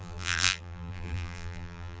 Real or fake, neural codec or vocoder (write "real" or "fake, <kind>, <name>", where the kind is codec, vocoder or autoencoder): fake, vocoder, BigVGAN v2